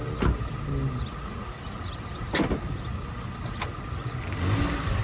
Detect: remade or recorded recorded